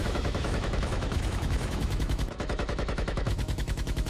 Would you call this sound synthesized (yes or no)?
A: yes